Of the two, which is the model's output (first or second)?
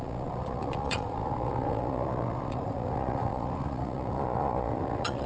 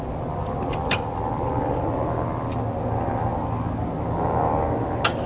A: first